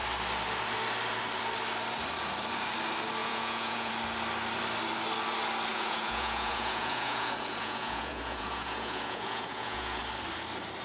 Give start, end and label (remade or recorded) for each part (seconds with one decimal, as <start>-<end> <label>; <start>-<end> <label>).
0.0-3.2 recorded; 3.2-3.9 remade; 3.9-5.7 recorded; 5.7-10.0 remade; 10.0-10.8 recorded